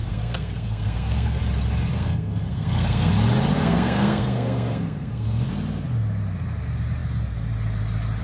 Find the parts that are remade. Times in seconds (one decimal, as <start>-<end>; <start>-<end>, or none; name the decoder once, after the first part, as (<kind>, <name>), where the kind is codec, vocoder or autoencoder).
0.0-1.4 (codec, SNAC); 1.9-3.1; 3.5-5.5